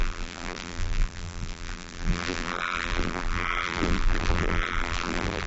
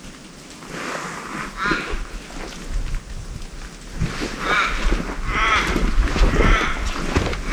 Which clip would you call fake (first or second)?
first